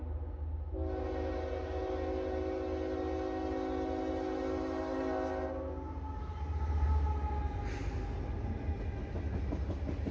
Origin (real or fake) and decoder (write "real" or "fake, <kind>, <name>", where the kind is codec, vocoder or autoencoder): real